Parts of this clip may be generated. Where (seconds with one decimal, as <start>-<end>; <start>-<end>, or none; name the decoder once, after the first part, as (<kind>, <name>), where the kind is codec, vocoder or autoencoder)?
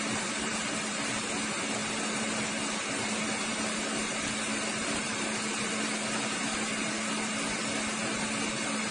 0.5-1.4 (vocoder, BigVGAN v2); 3.5-5.5